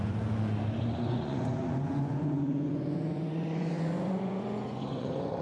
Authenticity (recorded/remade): remade